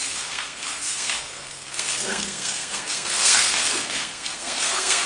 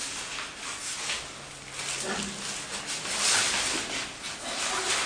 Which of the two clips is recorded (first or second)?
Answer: second